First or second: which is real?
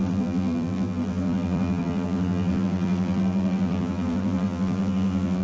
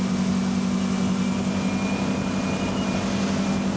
second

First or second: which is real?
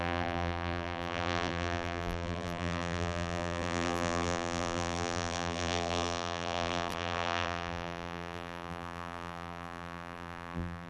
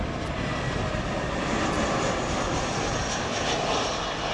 second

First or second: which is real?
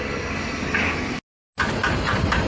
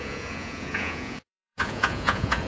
first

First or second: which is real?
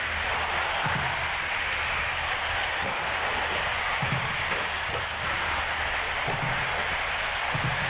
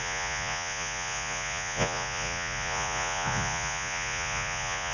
first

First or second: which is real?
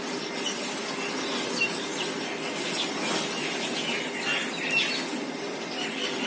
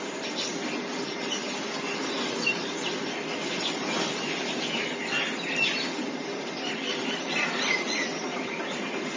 first